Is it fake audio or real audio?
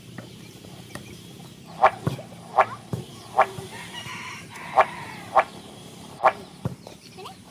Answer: fake